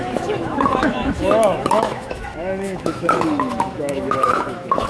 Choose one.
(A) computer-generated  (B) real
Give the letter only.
A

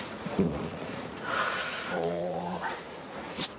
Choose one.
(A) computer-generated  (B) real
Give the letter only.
A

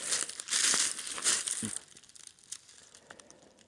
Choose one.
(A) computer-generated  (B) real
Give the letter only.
A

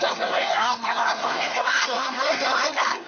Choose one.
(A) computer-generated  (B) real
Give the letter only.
A